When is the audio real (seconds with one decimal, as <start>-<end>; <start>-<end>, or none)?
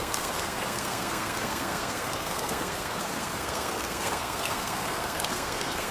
none